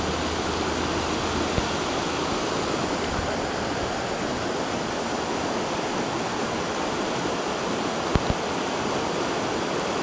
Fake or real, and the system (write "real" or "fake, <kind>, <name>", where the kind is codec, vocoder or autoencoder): real